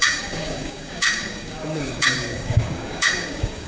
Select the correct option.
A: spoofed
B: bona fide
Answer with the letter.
A